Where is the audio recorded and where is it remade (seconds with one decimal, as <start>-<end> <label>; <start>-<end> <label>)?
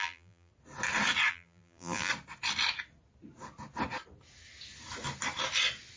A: 0.0-0.5 remade; 0.5-1.3 recorded; 1.3-2.1 remade; 2.1-6.0 recorded